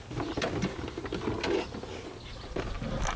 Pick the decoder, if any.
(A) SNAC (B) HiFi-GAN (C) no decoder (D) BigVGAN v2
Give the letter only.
C